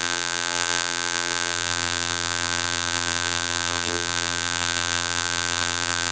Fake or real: fake